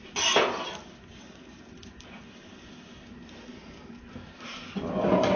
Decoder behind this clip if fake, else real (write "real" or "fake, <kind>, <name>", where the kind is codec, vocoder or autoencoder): real